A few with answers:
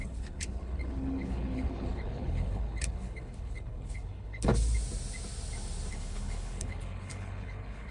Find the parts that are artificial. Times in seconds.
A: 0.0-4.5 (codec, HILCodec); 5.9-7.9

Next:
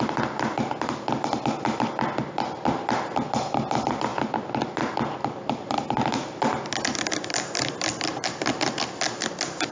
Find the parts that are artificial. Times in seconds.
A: none

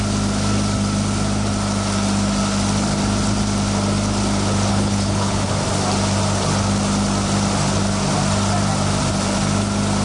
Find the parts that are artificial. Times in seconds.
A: 4.7-5.5 (codec, HILCodec)

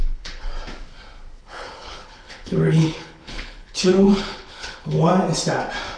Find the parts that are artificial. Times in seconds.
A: 0.0-0.5 (codec, HILCodec); 1.4-5.1

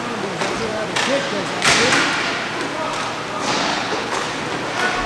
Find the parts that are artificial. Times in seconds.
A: 3.7-4.4 (codec, HILCodec)

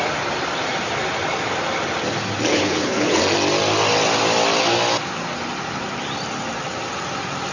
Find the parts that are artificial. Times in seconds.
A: 2.5-3.2 (codec, HILCodec)